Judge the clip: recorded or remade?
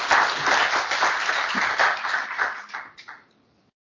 recorded